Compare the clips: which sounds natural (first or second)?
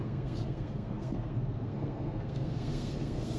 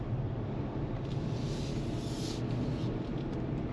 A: second